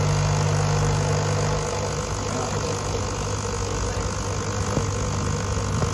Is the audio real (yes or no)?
yes